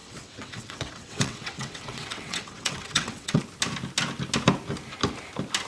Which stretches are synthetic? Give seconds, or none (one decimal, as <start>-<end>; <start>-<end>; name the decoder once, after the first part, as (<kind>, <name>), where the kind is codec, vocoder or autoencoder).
0.0-3.4 (vocoder, WaveNeXt)